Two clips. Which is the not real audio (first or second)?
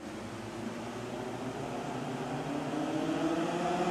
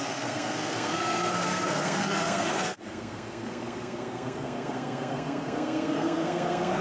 second